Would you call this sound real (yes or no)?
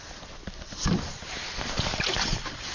yes